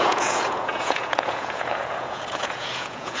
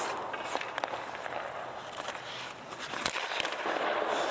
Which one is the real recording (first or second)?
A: second